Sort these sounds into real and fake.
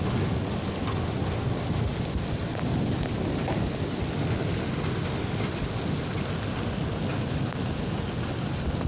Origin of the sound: real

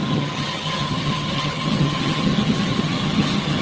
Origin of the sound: fake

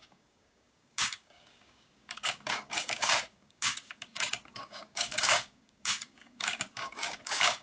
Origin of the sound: fake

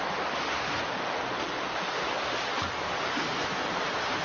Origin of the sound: real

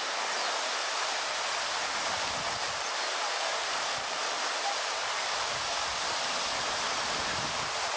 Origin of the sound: real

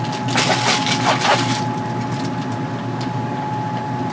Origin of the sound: real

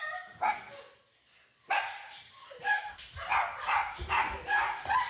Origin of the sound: real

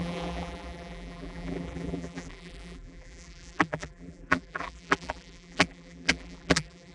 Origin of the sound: fake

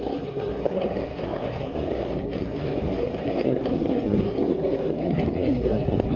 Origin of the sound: fake